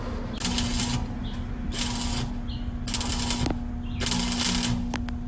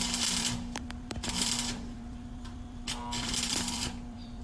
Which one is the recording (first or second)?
first